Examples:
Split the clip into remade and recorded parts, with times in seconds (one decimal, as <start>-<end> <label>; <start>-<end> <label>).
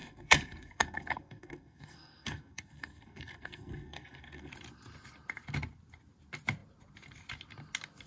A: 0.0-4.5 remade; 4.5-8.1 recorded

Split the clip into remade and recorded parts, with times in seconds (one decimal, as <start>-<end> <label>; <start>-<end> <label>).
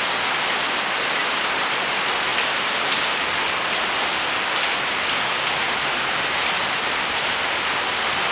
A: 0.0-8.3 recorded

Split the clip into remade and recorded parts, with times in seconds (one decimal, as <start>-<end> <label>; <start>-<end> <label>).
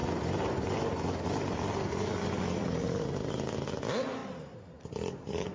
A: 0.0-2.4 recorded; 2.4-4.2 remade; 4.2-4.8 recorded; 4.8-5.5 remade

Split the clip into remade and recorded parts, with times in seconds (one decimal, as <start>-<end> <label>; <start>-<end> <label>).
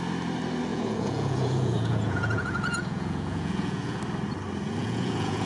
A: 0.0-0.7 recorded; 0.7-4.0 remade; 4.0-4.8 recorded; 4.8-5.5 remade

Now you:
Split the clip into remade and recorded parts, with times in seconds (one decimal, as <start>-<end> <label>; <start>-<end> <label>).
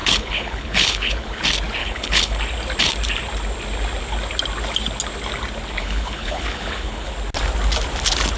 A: 0.0-1.4 remade; 1.4-1.8 recorded; 1.8-2.4 remade; 2.4-5.8 recorded; 5.8-7.1 remade; 7.1-8.4 recorded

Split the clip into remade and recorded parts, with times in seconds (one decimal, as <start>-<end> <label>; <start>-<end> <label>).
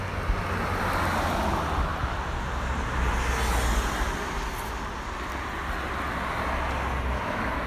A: 0.0-1.9 recorded; 1.9-3.3 remade; 3.3-7.7 recorded